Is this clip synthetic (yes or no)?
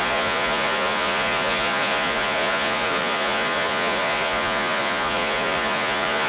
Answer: yes